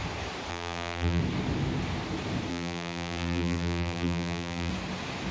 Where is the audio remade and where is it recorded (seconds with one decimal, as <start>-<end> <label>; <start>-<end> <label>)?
0.0-0.5 recorded; 0.5-1.2 remade; 1.2-2.5 recorded; 2.5-4.7 remade; 4.7-5.3 recorded